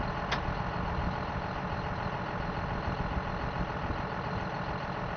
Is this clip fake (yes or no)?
no